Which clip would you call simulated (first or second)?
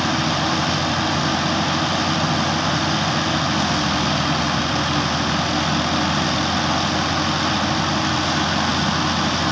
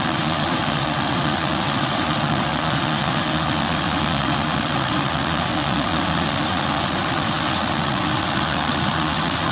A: second